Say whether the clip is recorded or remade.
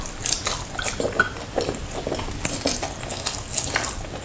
recorded